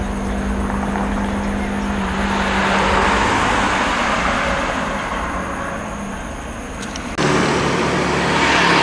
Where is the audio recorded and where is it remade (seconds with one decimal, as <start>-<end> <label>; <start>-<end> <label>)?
0.0-8.8 recorded